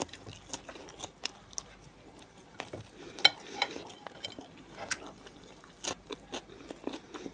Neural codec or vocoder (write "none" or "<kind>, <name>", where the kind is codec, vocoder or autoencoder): none